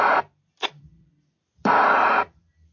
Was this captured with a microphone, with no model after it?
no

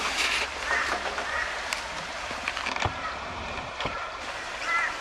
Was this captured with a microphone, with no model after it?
no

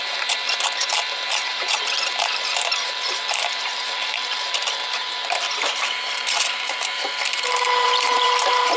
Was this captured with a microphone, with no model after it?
no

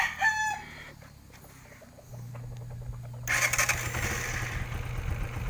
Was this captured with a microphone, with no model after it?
yes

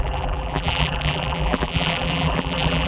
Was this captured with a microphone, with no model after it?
no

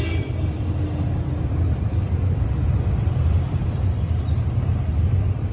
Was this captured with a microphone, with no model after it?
no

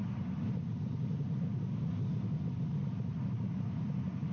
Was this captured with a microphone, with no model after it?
yes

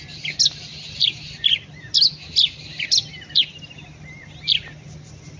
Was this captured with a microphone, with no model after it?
yes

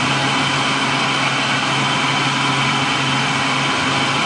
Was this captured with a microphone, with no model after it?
yes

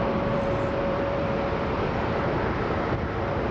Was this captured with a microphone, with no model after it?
no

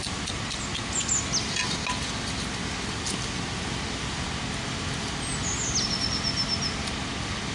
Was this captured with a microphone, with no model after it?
yes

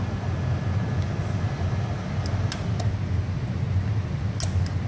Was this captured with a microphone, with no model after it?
yes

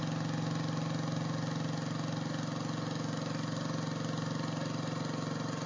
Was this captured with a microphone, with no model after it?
yes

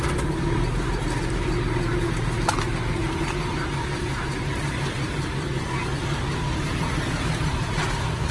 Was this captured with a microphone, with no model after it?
no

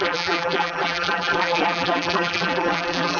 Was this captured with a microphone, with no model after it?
no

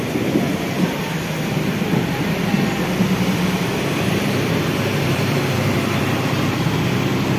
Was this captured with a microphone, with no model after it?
no